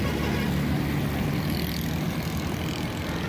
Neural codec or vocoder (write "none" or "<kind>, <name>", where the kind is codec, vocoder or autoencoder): none